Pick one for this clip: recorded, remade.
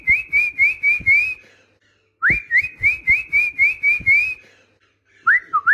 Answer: recorded